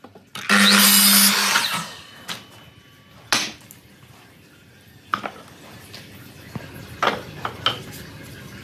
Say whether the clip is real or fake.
real